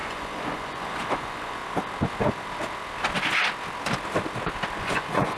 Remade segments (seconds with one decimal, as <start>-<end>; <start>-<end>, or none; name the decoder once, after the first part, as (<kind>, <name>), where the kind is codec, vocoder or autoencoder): 0.0-1.6 (vocoder, Vocos); 4.8-5.4

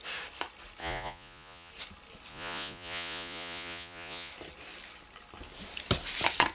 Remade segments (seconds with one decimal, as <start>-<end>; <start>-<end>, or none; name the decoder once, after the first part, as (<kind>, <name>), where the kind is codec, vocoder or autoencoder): 0.8-1.7 (vocoder, Vocos); 2.3-4.3

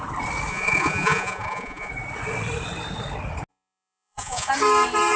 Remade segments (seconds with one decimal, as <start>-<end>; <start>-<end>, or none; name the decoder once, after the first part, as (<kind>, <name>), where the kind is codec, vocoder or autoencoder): 0.5-1.9 (vocoder, Vocos); 3.5-4.5

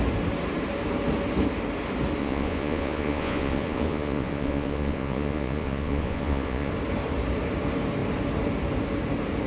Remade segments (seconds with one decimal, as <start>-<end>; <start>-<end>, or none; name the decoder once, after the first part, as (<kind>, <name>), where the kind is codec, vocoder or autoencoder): 2.2-6.7 (vocoder, Vocos)

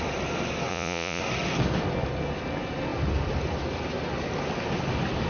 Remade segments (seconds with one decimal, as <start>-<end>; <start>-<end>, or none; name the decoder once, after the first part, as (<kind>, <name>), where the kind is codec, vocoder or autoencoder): 0.7-1.2 (vocoder, Vocos)

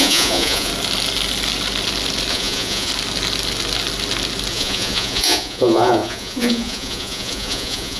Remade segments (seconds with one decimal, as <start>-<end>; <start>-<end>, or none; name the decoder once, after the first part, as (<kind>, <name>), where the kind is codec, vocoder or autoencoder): 0.0-0.7 (vocoder, Vocos); 2.3-2.9; 4.5-8.0

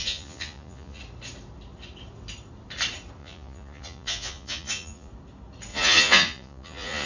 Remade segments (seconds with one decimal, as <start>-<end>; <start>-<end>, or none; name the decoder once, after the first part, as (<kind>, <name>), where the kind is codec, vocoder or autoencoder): 0.0-1.0 (vocoder, Vocos); 3.2-5.1; 5.7-7.1